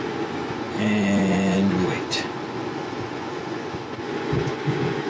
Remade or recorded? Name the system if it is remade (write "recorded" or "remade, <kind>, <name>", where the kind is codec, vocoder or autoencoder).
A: remade, vocoder, Vocos